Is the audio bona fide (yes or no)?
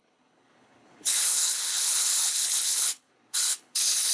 no